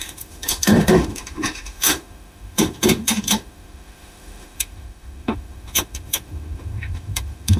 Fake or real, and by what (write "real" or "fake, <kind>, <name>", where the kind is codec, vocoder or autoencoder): fake, autoencoder, DAC-VAE